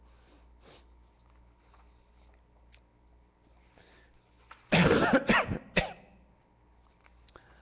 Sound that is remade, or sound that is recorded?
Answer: recorded